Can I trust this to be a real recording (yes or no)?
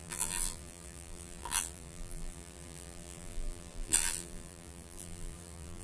no